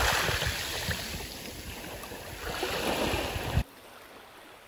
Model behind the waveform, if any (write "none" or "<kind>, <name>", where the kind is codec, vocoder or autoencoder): none